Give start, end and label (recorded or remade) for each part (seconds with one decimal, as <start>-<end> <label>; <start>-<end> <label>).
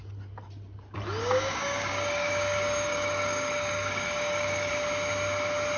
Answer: 0.0-1.2 recorded; 1.2-4.7 remade; 4.7-5.8 recorded